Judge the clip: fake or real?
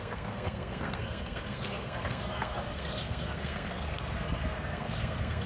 fake